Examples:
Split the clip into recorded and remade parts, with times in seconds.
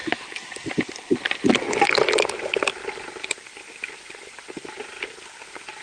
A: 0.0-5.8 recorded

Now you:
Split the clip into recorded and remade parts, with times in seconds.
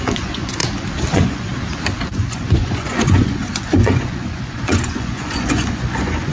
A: 0.0-0.6 remade; 0.6-1.1 recorded; 1.1-1.5 remade; 1.5-2.1 recorded; 2.1-6.3 remade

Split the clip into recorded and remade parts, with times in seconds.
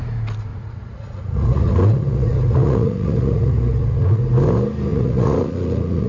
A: 0.0-0.5 recorded; 0.5-4.2 remade; 4.2-4.9 recorded; 4.9-6.1 remade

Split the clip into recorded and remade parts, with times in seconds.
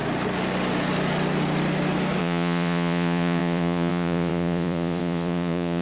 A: 0.0-2.2 recorded; 2.2-5.8 remade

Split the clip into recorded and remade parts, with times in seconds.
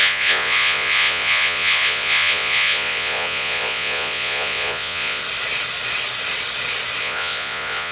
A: 0.0-5.2 remade; 5.2-7.0 recorded; 7.0-7.9 remade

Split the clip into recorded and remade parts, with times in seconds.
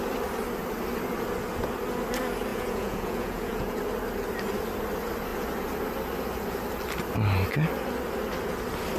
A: 0.0-2.5 recorded; 2.5-3.8 remade; 3.8-9.0 recorded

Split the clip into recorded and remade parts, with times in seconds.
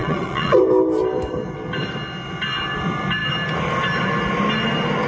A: 0.0-0.6 remade; 0.6-5.1 recorded